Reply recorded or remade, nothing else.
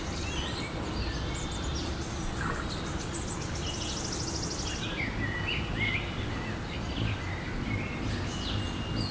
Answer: recorded